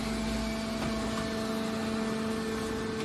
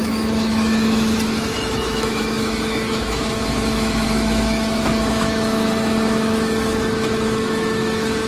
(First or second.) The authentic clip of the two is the first